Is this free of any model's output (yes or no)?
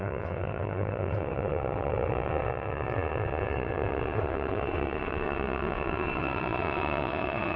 no